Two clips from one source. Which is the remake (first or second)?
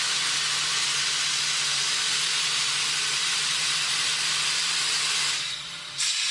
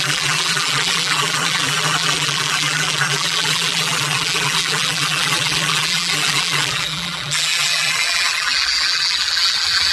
second